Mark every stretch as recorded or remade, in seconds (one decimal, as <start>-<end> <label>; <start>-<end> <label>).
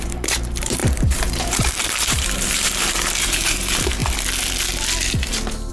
0.0-4.0 remade; 4.0-5.7 recorded